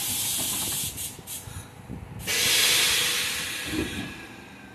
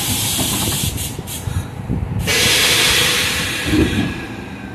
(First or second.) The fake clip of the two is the second